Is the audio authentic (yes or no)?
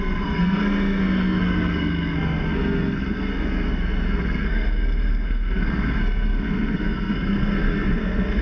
no